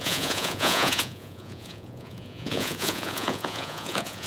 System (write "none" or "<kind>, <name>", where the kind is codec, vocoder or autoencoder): vocoder, Vocos